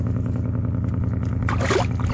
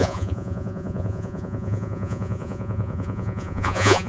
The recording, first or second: first